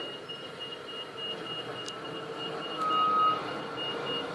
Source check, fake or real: real